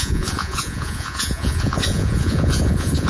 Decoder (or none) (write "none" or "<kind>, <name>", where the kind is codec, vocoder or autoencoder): vocoder, Vocos